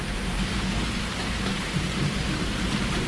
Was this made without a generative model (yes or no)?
no